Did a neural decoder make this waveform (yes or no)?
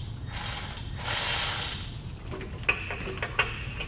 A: no